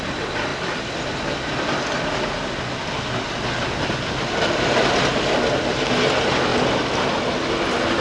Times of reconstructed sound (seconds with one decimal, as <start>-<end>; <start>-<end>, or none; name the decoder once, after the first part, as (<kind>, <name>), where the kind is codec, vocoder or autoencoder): none